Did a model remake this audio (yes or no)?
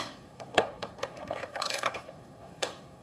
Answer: yes